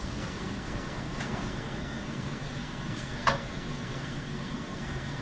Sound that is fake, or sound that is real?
fake